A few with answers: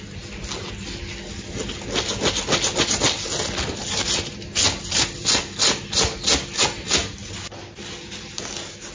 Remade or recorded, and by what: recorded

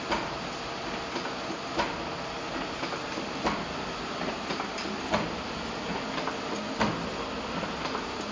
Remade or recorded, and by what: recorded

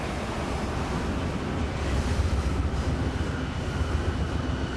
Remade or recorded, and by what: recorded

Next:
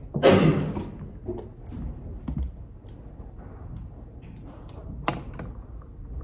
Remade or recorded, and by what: recorded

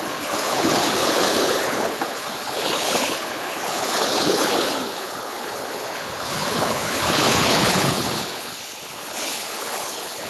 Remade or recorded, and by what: remade, codec, HILCodec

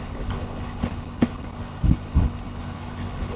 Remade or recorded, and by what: remade, codec, HILCodec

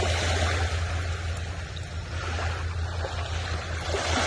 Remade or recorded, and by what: recorded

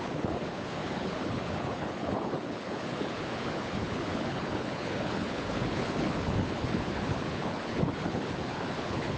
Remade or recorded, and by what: remade, codec, HILCodec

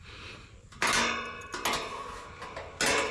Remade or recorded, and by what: recorded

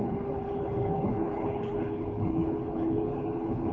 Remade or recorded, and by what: remade, codec, HILCodec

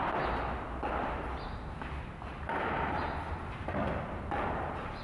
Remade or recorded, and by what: recorded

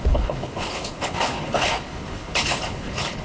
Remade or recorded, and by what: remade, codec, HILCodec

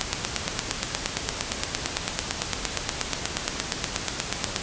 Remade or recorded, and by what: recorded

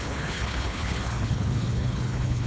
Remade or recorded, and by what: remade, codec, HILCodec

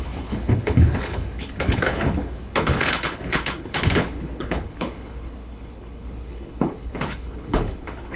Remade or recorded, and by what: remade, codec, HILCodec